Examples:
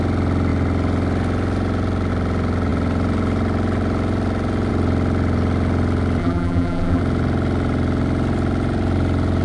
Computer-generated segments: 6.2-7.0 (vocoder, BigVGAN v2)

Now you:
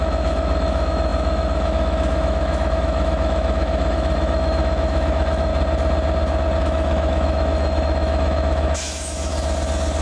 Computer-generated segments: 0.0-5.5 (autoencoder, DAC-VAE); 6.6-9.3

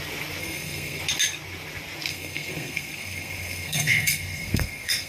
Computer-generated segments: 0.4-1.0 (codec, SNAC); 2.1-5.1